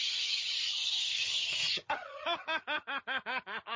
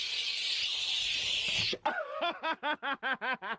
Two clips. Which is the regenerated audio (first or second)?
first